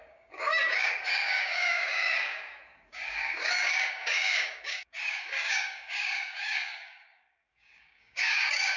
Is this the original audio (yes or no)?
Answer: no